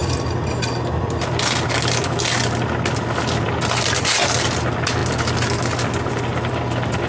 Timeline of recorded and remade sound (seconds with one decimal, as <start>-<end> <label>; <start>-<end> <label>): 0.0-7.1 recorded